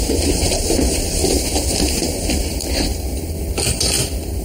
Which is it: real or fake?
real